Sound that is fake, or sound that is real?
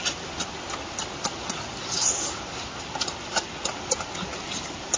real